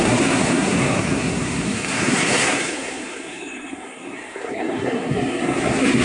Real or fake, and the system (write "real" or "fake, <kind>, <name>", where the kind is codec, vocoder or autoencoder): fake, codec, SNAC